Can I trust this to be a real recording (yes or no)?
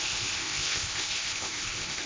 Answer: no